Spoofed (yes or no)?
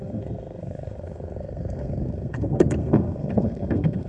yes